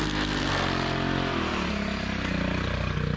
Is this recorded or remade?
recorded